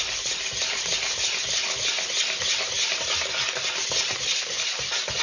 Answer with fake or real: real